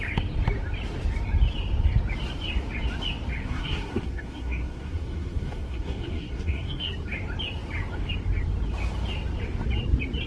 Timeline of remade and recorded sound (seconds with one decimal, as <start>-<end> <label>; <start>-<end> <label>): 0.0-3.4 recorded; 3.4-6.9 remade; 6.9-10.3 recorded